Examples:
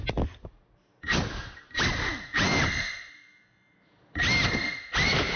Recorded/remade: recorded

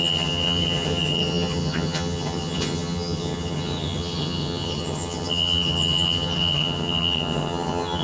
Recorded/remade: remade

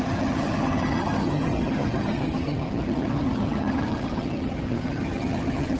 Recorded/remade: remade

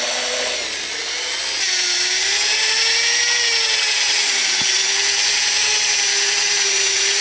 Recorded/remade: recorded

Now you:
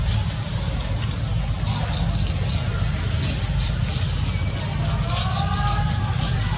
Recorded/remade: recorded